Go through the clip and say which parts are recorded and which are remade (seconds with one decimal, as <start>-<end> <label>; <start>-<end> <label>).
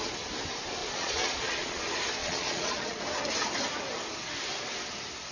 0.0-0.8 recorded; 0.8-1.8 remade; 1.8-2.2 recorded; 2.2-3.0 remade; 3.0-5.3 recorded